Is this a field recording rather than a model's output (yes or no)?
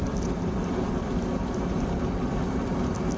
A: yes